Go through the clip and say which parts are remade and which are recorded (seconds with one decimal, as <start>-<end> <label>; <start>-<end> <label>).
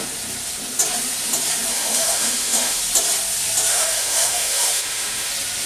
0.0-1.7 recorded; 1.7-2.8 remade; 2.8-3.7 recorded; 3.7-5.3 remade; 5.3-5.7 recorded